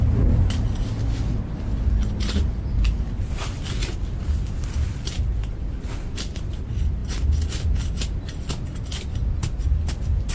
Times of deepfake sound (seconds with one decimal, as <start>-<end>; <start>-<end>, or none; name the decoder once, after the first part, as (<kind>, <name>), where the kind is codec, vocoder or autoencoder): none